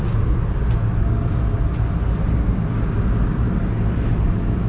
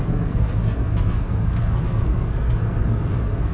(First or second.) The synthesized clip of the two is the second